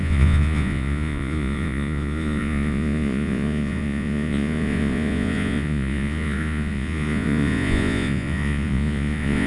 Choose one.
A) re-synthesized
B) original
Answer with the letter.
A